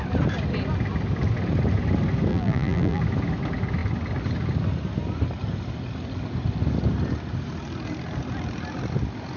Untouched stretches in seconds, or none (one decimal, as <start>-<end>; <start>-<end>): 0.0-2.3; 3.0-9.4